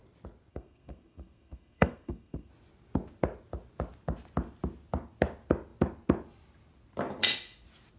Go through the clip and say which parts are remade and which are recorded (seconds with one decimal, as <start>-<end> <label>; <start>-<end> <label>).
0.0-0.5 recorded; 0.5-2.5 remade; 2.5-8.0 recorded